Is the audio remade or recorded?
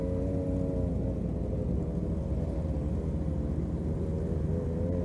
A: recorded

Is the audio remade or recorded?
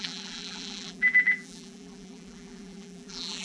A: remade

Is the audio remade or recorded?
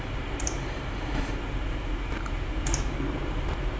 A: remade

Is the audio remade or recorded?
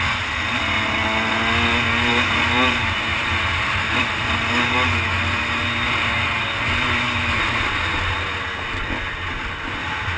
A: recorded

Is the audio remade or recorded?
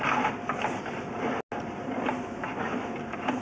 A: recorded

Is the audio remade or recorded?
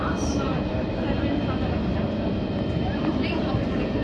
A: remade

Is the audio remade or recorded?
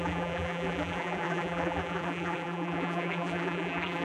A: remade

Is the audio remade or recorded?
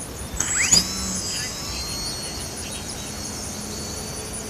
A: recorded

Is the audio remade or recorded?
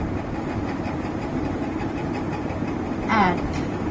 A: remade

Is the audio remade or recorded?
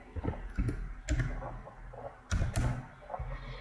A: recorded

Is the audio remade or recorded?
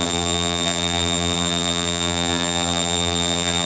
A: remade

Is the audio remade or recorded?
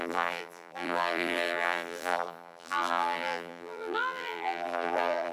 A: remade